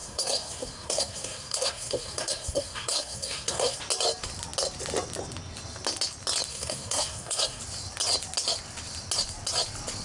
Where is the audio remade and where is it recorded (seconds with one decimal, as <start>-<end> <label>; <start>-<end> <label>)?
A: 0.0-3.8 remade; 3.8-6.5 recorded; 6.5-7.6 remade; 7.6-10.0 recorded